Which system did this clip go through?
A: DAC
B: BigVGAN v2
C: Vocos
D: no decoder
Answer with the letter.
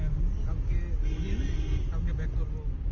D